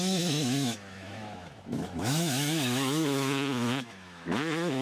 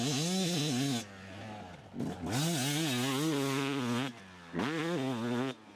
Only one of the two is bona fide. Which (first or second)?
second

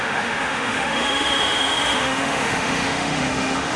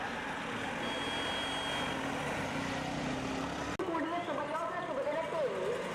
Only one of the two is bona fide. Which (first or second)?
second